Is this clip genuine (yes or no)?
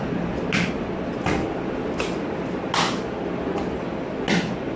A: yes